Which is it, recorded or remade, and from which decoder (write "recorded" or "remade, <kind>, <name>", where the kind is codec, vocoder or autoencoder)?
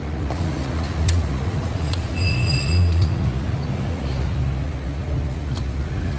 remade, vocoder, Vocos